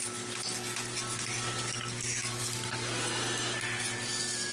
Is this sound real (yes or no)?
yes